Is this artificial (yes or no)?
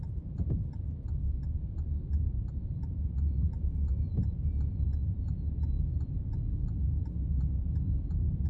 yes